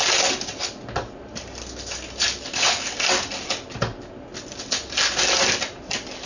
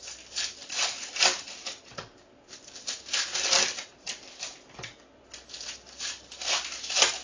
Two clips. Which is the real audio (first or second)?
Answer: first